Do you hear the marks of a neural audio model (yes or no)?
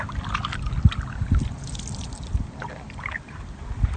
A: yes